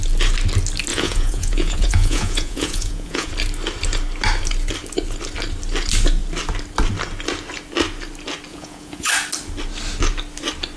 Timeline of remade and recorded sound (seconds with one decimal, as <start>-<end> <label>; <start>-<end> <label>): 0.0-0.9 recorded; 0.9-3.3 remade; 3.3-8.5 recorded; 8.5-9.1 remade; 9.1-10.8 recorded